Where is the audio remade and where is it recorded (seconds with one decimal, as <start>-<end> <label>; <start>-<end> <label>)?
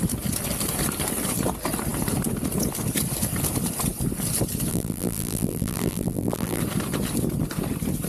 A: 0.0-4.7 recorded; 4.7-6.6 remade; 6.6-8.1 recorded